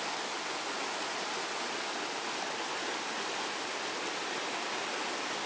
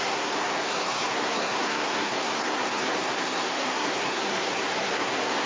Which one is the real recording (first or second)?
first